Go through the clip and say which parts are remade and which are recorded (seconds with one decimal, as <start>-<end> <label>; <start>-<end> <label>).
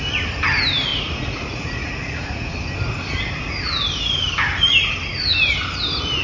0.0-0.9 recorded; 0.9-2.5 remade; 2.5-6.2 recorded